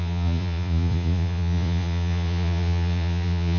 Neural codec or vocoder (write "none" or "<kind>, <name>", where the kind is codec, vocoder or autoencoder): vocoder, Vocos